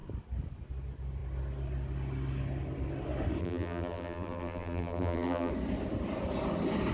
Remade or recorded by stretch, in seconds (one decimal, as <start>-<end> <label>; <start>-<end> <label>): 0.0-3.4 recorded; 3.4-5.5 remade; 5.5-6.9 recorded